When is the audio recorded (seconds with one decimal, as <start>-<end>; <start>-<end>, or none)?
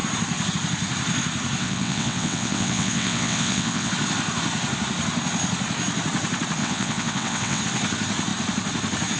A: 0.0-1.6; 3.9-6.6; 7.6-9.2